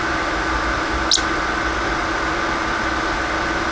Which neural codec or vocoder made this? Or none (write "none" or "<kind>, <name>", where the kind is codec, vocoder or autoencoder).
none